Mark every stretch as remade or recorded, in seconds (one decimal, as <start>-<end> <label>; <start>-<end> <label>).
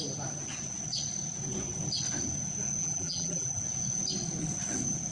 0.0-2.8 recorded; 2.8-3.6 remade; 3.6-5.1 recorded